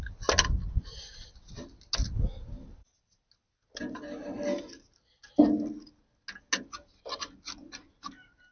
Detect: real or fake real